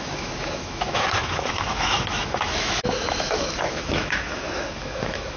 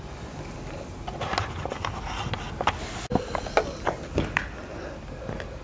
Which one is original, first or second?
second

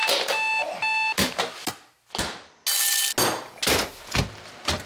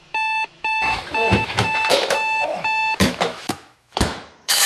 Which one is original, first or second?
first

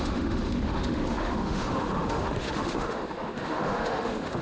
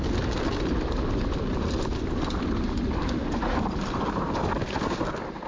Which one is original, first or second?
second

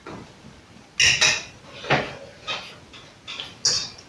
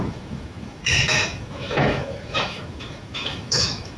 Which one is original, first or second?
first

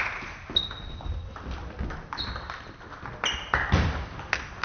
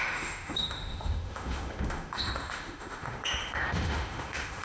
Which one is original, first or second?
first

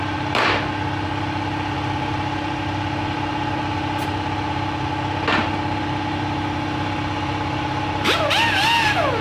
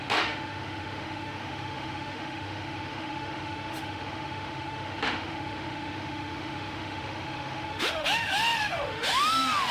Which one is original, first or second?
first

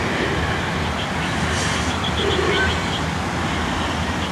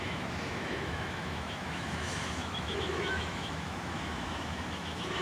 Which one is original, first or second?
first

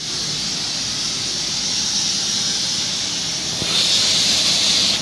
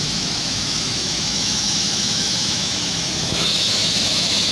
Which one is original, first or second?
first